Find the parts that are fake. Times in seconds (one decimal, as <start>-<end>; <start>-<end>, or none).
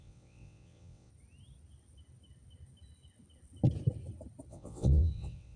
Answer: 0.0-1.1; 4.5-5.6